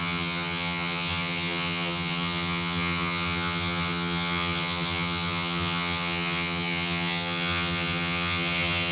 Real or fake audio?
fake